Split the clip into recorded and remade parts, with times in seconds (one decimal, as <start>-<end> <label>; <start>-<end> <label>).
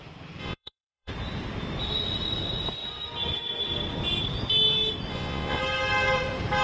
0.0-0.4 recorded; 0.4-1.1 remade; 1.1-5.1 recorded; 5.1-5.6 remade; 5.6-6.6 recorded